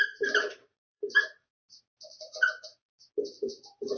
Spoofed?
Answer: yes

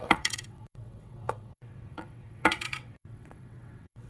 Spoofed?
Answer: yes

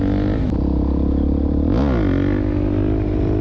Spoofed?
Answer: no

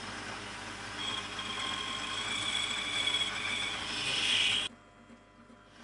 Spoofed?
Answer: no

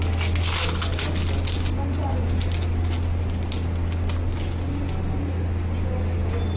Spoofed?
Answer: no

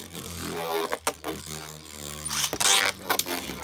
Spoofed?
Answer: no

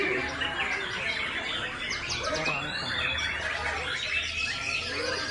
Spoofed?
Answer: no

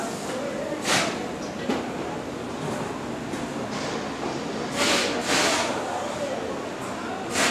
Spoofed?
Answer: no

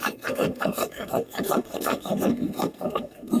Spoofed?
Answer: yes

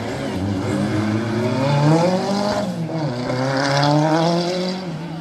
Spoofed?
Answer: no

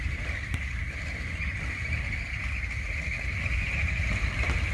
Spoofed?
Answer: no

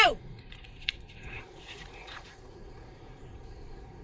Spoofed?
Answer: yes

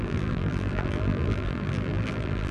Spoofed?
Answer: yes